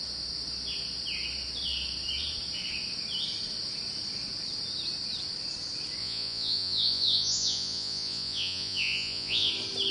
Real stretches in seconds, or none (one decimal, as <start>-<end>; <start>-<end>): 0.0-6.0; 9.5-9.9